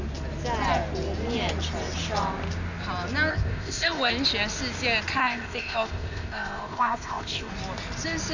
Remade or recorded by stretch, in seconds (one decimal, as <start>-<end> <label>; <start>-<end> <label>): 0.0-3.3 recorded; 3.3-4.1 remade; 4.1-5.2 recorded; 5.2-7.5 remade; 7.5-8.3 recorded